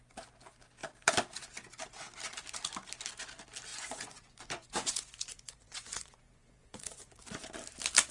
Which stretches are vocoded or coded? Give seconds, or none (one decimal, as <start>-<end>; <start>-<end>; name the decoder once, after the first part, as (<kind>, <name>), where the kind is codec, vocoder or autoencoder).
3.7-7.2 (vocoder, Vocos)